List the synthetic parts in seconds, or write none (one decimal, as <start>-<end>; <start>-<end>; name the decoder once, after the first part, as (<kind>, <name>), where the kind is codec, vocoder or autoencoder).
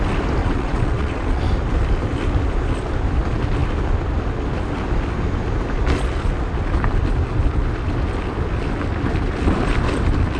0.4-1.4 (vocoder, WaveNeXt)